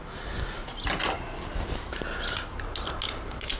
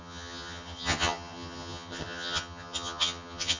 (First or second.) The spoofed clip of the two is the second